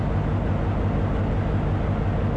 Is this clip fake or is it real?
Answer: real